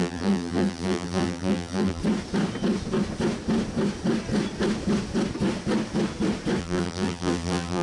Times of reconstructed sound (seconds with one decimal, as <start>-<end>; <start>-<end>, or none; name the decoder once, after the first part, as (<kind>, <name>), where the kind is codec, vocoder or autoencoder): 0.0-2.0 (vocoder, BigVGAN v2); 6.6-7.8